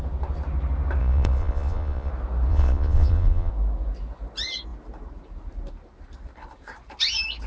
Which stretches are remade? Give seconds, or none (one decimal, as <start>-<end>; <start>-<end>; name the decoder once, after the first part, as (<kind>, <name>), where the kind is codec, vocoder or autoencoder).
1.0-2.1 (vocoder, Vocos); 2.5-3.5